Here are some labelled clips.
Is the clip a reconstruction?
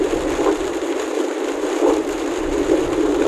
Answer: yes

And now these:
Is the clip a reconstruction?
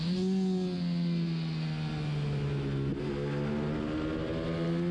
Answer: no